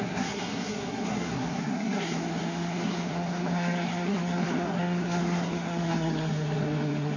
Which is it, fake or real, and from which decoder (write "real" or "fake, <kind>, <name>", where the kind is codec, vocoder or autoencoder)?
fake, codec, SNAC